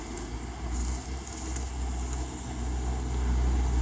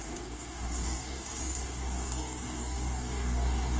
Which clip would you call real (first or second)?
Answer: first